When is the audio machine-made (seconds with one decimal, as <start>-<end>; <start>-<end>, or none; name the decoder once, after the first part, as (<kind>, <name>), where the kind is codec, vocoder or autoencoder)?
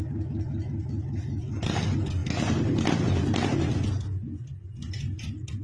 none